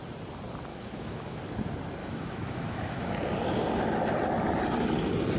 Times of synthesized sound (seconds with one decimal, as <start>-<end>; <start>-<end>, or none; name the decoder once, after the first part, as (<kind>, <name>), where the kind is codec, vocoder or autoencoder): 0.7-1.4 (autoencoder, DAC-VAE); 2.0-3.1